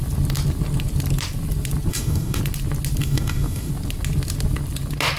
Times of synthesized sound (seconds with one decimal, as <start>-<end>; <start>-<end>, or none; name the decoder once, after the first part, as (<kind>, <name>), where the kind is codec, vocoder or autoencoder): 1.9-2.4 (codec, DAC); 3.0-3.7